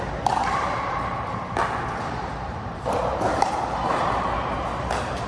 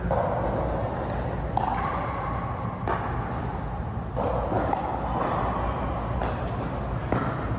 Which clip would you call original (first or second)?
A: second